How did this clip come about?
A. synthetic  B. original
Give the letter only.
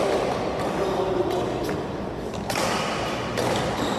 B